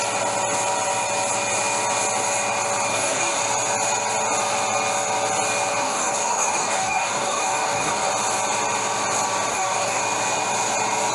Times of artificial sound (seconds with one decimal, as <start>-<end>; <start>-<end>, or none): 2.9-3.4; 5.8-8.1; 9.5-10.0